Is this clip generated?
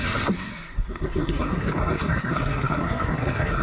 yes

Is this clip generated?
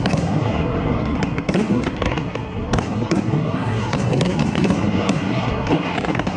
yes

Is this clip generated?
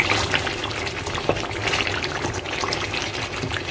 no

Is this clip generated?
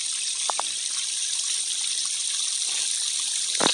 no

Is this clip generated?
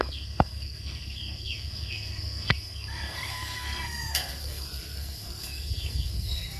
yes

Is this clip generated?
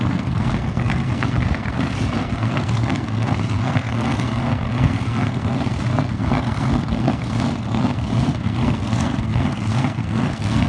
yes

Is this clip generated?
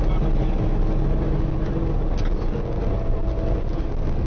no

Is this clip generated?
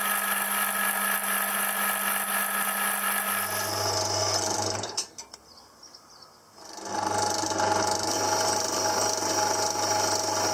no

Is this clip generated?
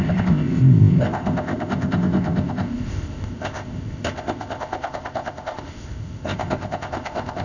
yes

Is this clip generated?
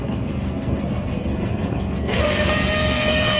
yes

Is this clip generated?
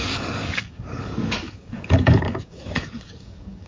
yes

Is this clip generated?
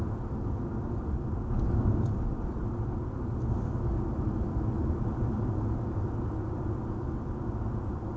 no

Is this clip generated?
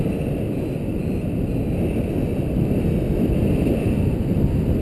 no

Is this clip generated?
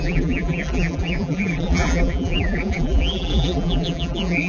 yes